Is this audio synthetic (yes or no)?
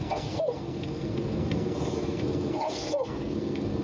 yes